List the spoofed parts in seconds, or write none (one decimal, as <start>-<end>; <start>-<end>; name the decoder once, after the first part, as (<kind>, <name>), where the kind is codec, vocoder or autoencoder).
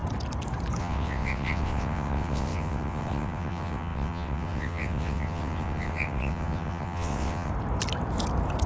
0.8-7.5 (vocoder, WaveNeXt)